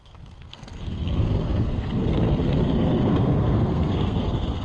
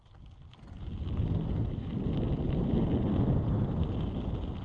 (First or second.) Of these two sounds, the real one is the second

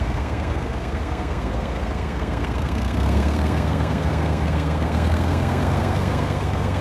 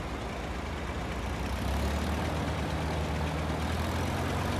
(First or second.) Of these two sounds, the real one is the second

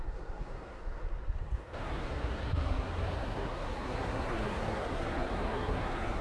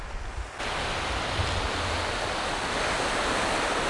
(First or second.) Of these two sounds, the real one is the second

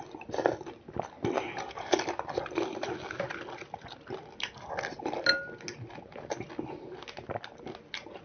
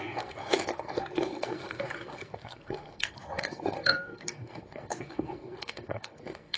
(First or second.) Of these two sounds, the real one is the first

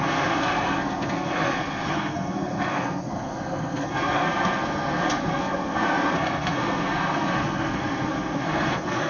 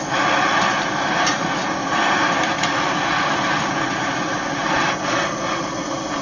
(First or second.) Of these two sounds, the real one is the second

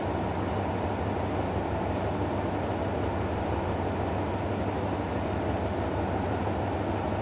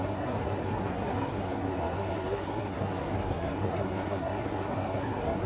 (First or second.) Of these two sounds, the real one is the first